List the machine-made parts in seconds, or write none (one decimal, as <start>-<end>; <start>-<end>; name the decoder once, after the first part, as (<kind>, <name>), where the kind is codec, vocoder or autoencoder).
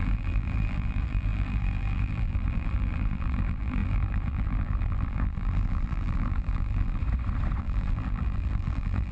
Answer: 0.0-7.0 (vocoder, BigVGAN v2); 7.6-9.1